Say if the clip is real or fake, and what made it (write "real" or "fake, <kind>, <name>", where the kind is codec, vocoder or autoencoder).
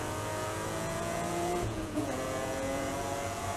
fake, vocoder, Vocos